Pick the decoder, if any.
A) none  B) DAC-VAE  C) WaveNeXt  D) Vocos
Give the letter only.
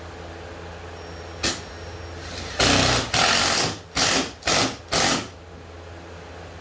A